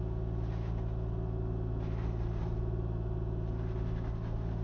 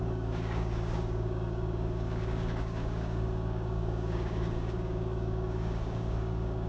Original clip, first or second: first